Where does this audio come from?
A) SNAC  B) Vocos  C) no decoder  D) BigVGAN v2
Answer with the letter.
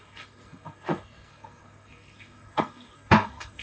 A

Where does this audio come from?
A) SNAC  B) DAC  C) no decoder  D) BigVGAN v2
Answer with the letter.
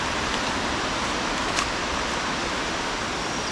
C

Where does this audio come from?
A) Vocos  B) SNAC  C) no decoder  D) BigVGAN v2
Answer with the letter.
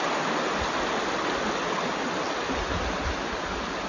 C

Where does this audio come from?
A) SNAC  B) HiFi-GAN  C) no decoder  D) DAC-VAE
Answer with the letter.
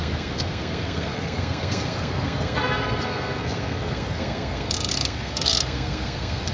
A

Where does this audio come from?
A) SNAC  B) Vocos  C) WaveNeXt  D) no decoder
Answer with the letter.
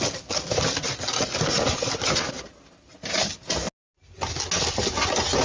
D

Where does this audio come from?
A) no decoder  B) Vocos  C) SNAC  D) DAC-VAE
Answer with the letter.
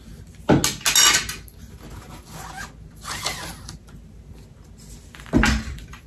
A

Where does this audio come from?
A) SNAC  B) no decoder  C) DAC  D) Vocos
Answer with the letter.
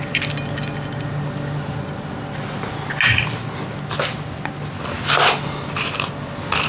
B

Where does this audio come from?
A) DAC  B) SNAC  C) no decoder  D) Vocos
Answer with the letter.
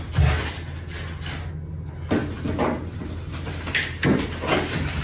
C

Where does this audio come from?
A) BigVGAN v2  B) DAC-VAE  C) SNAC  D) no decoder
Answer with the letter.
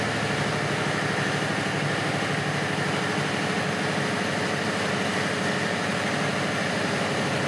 D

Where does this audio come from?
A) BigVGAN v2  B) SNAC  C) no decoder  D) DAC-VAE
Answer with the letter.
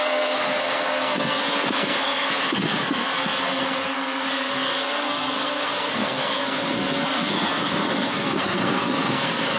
B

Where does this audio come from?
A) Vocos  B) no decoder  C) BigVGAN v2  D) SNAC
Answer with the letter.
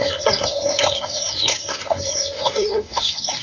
D